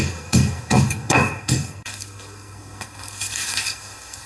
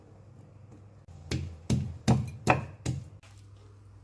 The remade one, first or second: first